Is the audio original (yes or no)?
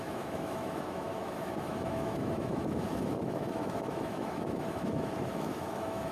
no